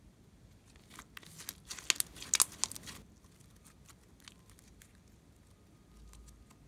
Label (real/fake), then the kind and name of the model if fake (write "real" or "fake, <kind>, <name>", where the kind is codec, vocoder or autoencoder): real